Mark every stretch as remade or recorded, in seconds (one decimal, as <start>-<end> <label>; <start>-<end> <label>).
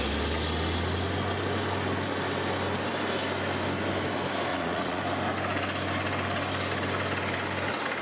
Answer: 0.0-4.5 recorded; 4.5-5.0 remade; 5.0-8.0 recorded